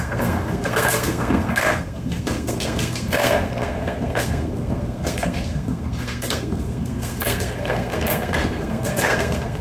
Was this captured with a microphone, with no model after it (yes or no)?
no